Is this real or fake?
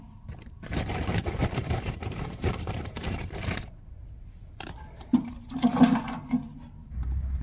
fake